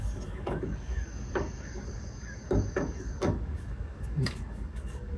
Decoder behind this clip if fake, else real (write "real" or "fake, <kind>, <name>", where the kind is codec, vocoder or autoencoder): fake, codec, DAC